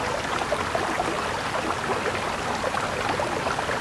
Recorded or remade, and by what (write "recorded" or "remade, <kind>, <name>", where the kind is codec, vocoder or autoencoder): recorded